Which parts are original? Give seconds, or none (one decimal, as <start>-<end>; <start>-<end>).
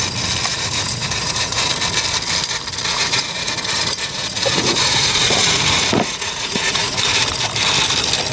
0.0-0.5; 1.7-2.9; 7.0-8.3